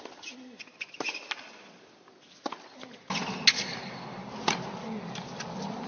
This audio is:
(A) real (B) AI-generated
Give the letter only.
A